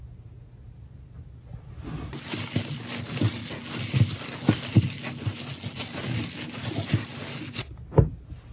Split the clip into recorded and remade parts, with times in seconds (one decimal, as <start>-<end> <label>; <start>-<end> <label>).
0.0-8.5 recorded